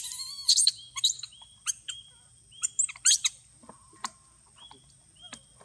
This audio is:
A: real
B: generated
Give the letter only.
A